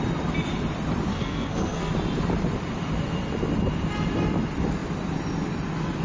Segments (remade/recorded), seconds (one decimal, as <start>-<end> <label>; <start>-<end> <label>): 0.0-1.1 recorded; 1.1-1.9 remade; 1.9-6.0 recorded